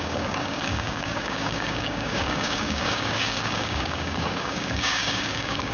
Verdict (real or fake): fake